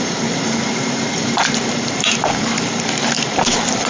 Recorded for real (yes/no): no